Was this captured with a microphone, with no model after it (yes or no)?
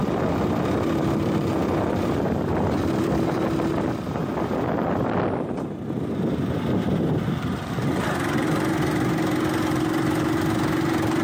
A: yes